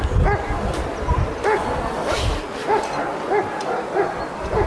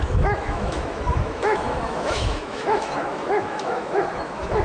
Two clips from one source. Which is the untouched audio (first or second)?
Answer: first